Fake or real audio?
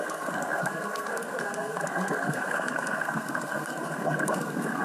fake